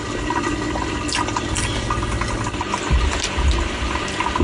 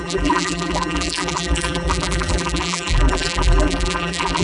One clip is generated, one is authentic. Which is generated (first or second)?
second